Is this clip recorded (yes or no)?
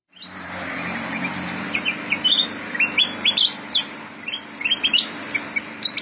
no